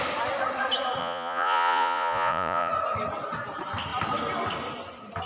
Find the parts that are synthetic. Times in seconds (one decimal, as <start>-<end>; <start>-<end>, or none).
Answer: 1.0-2.7